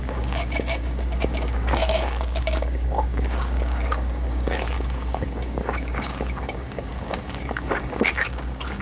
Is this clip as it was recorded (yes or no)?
no